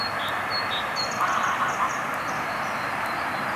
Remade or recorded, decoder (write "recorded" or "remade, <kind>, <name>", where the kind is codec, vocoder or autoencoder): recorded